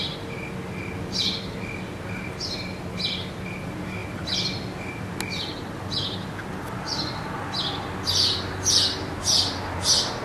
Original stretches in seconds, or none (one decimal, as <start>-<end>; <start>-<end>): 0.0-10.2